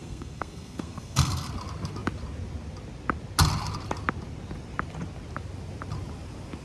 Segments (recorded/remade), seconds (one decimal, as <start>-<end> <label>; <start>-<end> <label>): 0.0-1.5 remade; 1.5-6.6 recorded